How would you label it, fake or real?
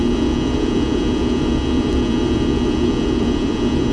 fake